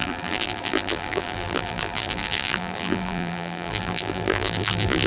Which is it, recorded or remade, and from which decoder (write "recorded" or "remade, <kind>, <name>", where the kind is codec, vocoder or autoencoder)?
remade, vocoder, BigVGAN v2